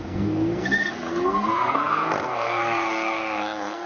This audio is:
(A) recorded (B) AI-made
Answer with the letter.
B